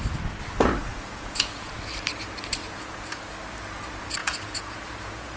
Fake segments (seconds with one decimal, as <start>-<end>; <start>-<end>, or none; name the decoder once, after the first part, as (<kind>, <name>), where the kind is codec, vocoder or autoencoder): 0.9-1.7 (vocoder, Vocos); 2.6-3.2; 4.2-5.4